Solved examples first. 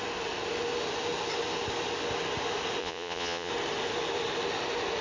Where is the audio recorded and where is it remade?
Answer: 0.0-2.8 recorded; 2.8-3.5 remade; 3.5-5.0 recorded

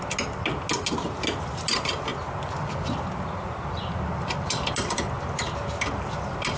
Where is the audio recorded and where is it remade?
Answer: 0.0-6.6 recorded

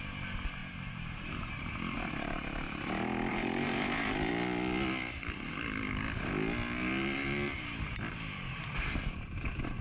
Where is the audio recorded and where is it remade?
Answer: 0.0-0.6 recorded; 0.6-1.5 remade; 1.5-3.3 recorded; 3.3-4.3 remade; 4.3-9.8 recorded

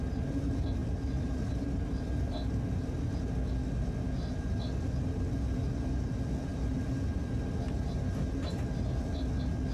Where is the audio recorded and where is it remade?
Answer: 0.0-9.7 recorded

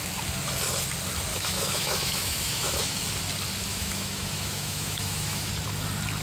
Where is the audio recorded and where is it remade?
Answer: 0.0-1.3 recorded; 1.3-3.0 remade; 3.0-3.7 recorded; 3.7-5.5 remade; 5.5-6.2 recorded